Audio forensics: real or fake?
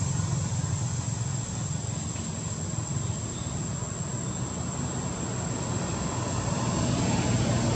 real